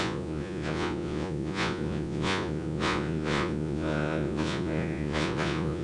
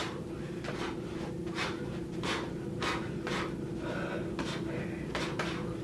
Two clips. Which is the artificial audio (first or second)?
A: first